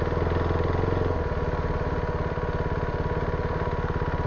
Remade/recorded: recorded